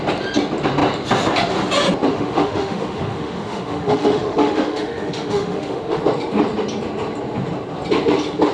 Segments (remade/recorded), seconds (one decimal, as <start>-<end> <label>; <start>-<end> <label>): 0.0-2.1 recorded; 2.1-6.0 remade; 6.0-8.5 recorded